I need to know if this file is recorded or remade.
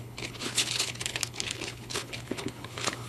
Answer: remade